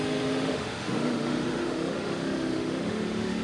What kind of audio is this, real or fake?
fake